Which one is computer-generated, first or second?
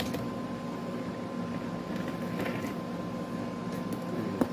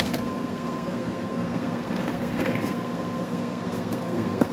second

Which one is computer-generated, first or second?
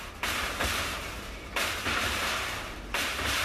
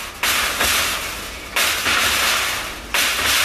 first